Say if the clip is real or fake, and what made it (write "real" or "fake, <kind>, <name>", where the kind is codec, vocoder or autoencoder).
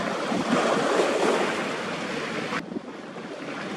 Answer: real